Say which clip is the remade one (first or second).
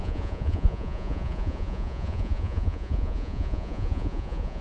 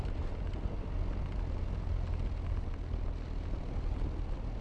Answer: first